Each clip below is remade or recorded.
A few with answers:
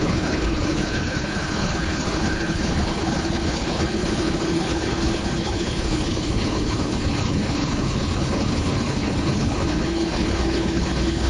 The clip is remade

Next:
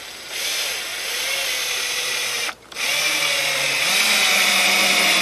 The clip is recorded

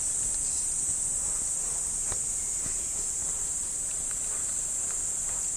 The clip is recorded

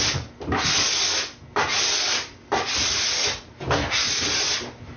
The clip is recorded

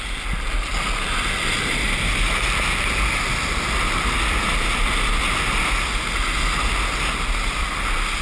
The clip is recorded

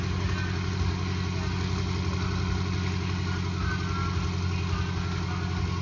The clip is recorded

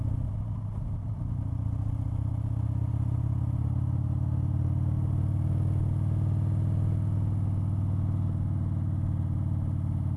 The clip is recorded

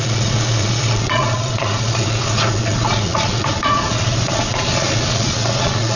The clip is remade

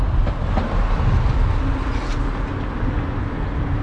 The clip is recorded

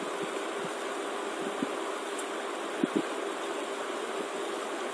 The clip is recorded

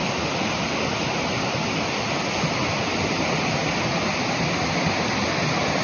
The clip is recorded